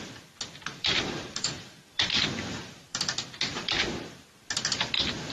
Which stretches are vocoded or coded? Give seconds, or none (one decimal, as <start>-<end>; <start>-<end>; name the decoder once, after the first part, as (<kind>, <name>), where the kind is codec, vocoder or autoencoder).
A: 0.7-3.9 (vocoder, BigVGAN v2)